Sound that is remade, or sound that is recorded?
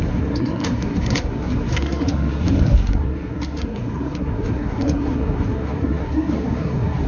remade